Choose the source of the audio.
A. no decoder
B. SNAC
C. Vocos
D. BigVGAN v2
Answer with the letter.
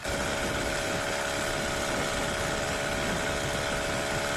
A